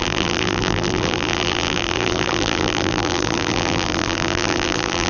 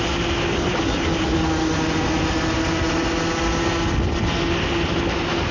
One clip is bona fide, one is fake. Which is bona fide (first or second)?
second